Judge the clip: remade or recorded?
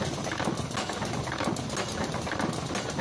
recorded